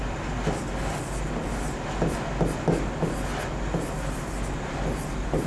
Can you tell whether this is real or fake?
real